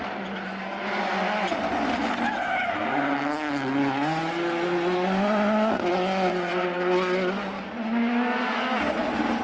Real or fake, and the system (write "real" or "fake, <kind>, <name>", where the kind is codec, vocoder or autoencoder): real